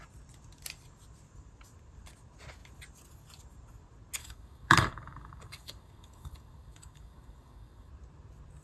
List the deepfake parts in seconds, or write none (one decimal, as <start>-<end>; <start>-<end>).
4.2-7.9